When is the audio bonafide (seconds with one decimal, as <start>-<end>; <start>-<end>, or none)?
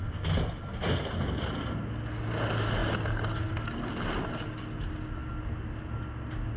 0.0-6.6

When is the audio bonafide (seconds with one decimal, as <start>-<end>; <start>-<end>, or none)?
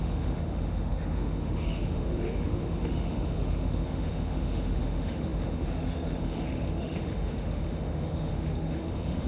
none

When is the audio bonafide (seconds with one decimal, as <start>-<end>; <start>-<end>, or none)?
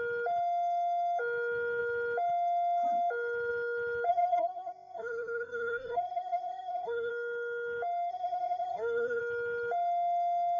0.0-4.1; 7.1-8.1; 9.2-10.6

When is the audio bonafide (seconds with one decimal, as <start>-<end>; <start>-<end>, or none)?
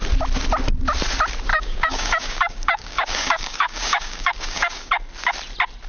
0.0-1.5; 4.9-5.9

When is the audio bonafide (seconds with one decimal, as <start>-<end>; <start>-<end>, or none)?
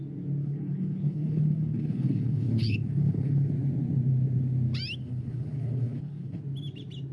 0.0-0.4; 3.5-5.0; 6.4-7.1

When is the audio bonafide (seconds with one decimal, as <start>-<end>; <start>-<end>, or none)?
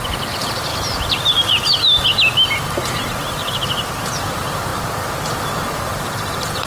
0.7-4.1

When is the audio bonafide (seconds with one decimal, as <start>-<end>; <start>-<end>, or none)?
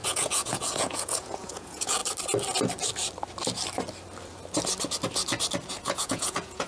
2.0-5.7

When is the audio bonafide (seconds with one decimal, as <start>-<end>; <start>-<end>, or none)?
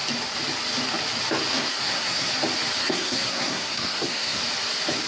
0.0-1.5; 2.3-2.8; 4.4-5.1